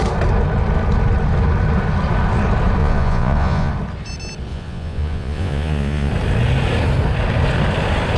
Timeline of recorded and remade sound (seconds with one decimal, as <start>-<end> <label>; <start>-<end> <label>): 0.0-2.8 recorded; 2.8-3.7 remade; 3.7-4.5 recorded; 4.5-6.1 remade; 6.1-8.2 recorded